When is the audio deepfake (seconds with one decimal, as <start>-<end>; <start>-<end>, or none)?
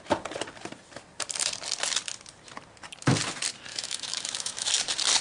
3.7-4.7